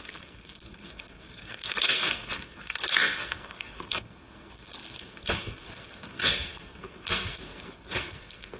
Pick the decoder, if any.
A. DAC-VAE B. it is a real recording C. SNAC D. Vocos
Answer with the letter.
C